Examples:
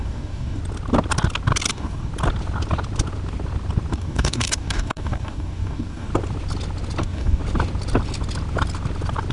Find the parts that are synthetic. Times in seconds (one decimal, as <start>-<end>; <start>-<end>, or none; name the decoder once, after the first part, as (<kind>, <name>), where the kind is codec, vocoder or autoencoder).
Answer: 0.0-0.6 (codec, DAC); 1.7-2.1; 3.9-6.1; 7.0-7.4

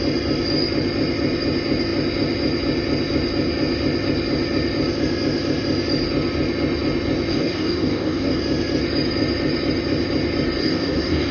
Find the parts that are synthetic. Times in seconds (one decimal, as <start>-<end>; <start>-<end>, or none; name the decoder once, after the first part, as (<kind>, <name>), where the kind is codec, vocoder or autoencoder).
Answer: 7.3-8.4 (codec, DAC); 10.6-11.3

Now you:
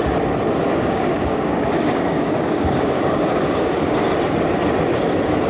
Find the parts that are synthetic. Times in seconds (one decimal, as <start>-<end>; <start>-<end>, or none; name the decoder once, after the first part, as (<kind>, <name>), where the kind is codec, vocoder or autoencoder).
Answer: 0.7-4.0 (codec, DAC)

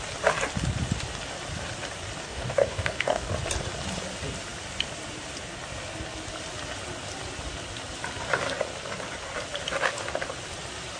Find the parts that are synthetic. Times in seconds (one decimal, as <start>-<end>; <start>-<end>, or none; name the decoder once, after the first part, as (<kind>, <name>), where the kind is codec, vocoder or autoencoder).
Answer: 2.2-3.3 (codec, DAC)

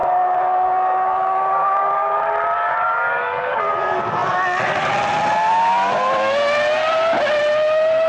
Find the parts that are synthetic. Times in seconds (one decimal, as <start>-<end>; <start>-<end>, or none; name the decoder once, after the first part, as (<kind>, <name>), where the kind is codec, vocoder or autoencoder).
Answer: 0.0-2.2 (codec, DAC); 2.6-3.6